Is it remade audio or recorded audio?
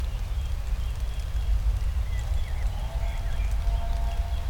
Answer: recorded